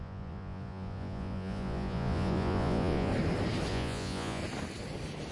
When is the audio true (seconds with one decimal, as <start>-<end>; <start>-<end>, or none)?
3.1-3.7; 4.4-5.3